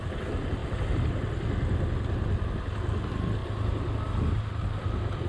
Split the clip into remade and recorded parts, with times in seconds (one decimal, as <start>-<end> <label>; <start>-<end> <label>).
0.0-5.3 recorded